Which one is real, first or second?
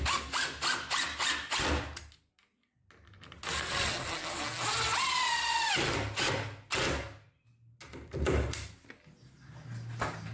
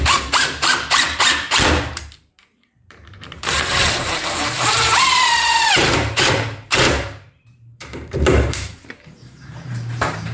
first